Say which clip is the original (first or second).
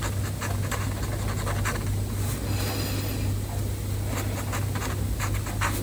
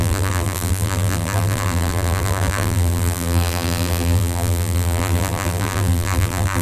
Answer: first